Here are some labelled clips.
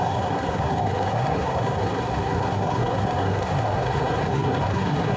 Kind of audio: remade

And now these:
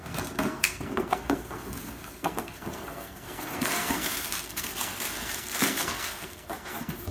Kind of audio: remade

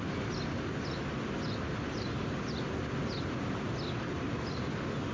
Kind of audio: recorded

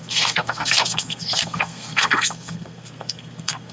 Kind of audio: remade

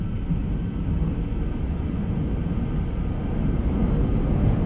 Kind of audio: recorded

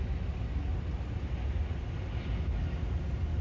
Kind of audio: recorded